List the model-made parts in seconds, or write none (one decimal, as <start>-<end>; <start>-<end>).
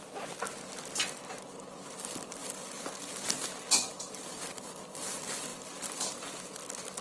none